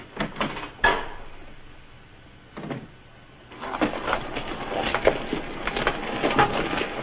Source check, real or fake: real